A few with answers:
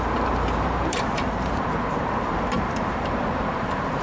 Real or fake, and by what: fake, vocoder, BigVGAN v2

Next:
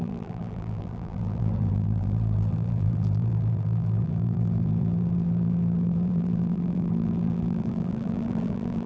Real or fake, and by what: fake, vocoder, BigVGAN v2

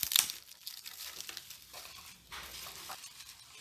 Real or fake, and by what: fake, vocoder, BigVGAN v2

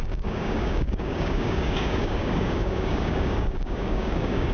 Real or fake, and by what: fake, codec, DAC